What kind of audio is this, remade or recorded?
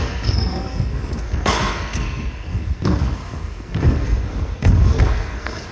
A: remade